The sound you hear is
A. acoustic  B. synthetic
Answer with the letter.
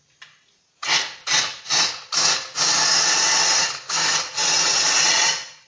A